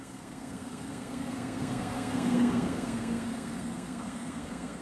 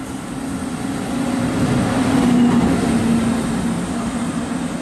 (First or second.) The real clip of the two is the second